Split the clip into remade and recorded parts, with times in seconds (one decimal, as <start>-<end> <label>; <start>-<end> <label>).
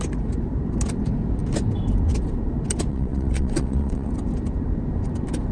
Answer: 0.0-2.9 recorded; 2.9-4.1 remade; 4.1-5.5 recorded